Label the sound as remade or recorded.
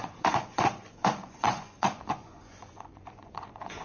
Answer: remade